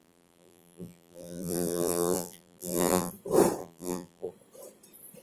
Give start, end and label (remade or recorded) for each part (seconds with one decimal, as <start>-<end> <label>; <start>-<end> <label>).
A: 0.0-3.1 remade; 3.1-3.6 recorded; 3.6-4.3 remade; 4.3-5.2 recorded